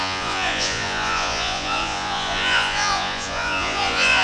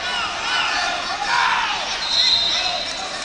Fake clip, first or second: first